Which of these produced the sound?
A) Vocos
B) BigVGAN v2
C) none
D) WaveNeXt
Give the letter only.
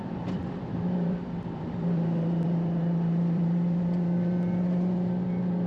B